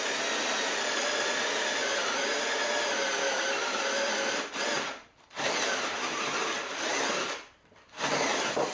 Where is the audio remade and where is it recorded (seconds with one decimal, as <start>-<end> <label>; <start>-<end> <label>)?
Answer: 0.0-8.7 recorded